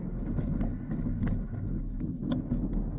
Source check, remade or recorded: recorded